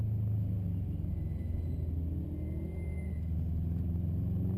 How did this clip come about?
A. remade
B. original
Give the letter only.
B